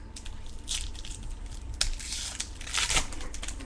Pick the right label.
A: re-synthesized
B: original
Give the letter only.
B